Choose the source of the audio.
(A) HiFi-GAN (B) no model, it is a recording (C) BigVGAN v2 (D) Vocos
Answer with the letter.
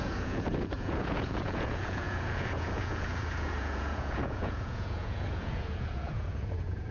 D